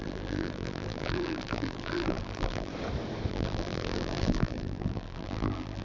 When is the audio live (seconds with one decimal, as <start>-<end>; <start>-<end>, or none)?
2.7-3.3